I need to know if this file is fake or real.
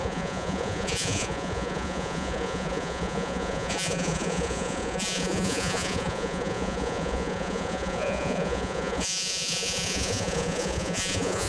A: fake